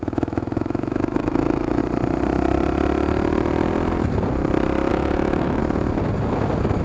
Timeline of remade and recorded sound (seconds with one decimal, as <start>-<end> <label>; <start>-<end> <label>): 0.0-1.8 remade; 1.8-4.9 recorded; 4.9-5.6 remade; 5.6-6.8 recorded